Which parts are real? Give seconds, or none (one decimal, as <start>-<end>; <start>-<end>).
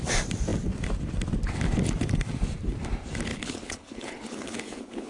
0.0-3.3